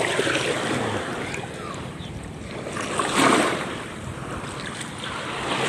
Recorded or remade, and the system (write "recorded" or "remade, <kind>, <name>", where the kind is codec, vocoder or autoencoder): recorded